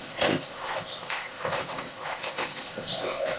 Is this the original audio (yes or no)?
no